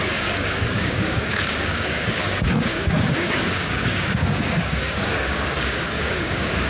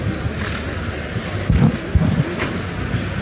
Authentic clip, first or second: second